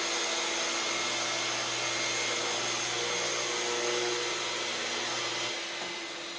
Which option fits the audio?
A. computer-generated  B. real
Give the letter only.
B